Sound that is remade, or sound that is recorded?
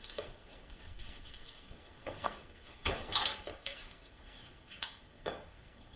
remade